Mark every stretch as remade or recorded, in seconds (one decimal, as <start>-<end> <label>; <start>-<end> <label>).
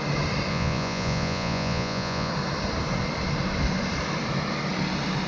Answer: 0.0-0.5 recorded; 0.5-2.3 remade; 2.3-5.3 recorded